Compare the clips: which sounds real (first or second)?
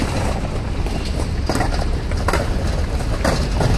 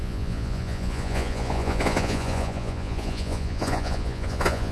first